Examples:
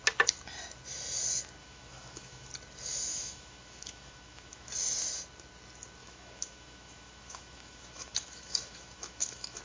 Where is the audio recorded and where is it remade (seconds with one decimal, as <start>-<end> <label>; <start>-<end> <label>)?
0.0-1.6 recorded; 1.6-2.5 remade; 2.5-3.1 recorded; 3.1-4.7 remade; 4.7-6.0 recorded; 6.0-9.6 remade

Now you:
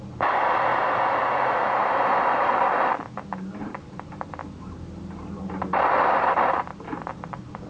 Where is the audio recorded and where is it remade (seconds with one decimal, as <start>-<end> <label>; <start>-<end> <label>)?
0.0-0.7 remade; 0.7-3.6 recorded; 3.6-4.4 remade; 4.4-6.0 recorded; 6.0-7.7 remade

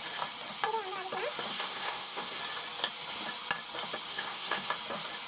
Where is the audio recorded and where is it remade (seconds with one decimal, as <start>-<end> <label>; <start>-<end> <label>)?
0.0-1.5 recorded; 1.5-2.4 remade; 2.4-4.1 recorded; 4.1-4.7 remade; 4.7-5.3 recorded

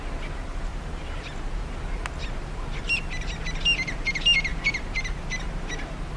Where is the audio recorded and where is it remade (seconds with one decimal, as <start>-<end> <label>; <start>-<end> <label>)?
0.0-6.2 recorded

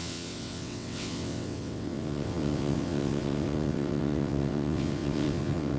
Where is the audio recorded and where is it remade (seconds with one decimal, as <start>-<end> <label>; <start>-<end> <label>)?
0.0-5.8 remade

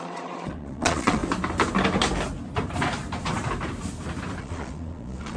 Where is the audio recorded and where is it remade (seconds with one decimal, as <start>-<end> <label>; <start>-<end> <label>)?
0.0-1.2 remade; 1.2-4.4 recorded; 4.4-5.4 remade